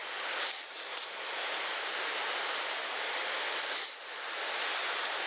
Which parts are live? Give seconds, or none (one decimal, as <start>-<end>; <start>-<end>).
0.0-5.3